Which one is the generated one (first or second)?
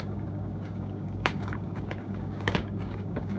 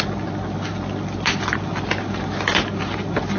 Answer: first